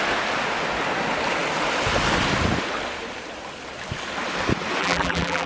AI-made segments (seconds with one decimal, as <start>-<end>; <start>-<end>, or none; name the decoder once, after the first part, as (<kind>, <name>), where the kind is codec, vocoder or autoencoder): 4.8-5.5 (vocoder, BigVGAN v2)